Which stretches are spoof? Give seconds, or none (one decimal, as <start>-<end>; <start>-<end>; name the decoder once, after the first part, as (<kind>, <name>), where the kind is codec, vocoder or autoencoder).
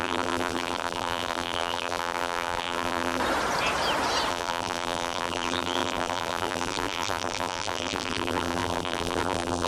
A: 0.0-3.2 (vocoder, BigVGAN v2); 4.3-9.7